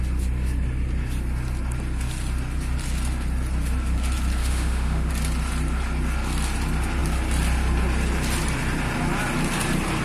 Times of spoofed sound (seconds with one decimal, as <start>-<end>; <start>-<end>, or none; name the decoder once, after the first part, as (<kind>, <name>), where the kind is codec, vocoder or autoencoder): 4.4-5.1 (autoencoder, DAC-VAE)